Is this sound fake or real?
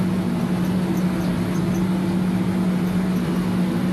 real